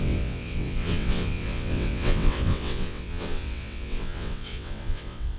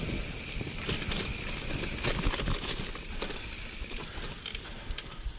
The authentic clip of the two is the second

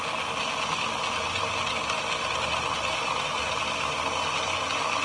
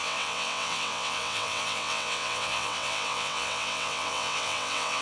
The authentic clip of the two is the first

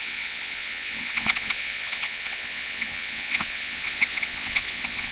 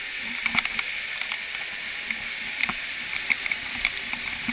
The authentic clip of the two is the second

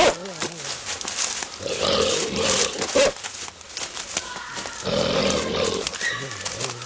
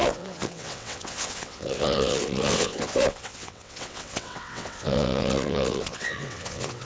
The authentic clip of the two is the first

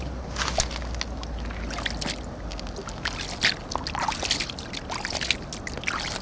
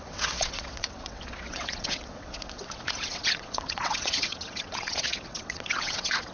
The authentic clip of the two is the first